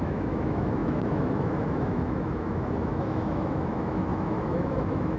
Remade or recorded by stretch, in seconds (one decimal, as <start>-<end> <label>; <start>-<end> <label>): 0.0-5.2 remade